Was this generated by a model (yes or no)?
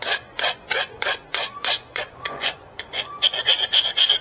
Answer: yes